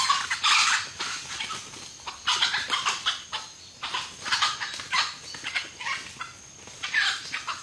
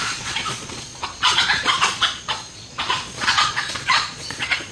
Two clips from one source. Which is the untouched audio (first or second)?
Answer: first